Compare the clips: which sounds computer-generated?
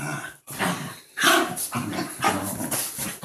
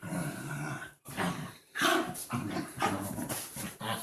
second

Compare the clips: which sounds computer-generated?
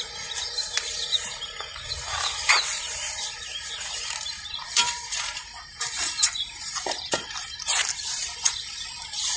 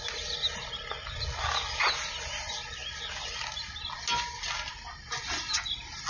first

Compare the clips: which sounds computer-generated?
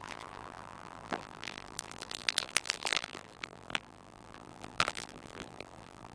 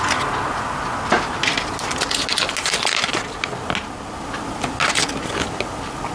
first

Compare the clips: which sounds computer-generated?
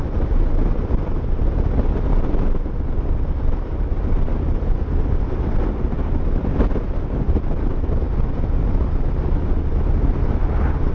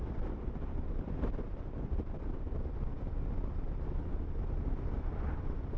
second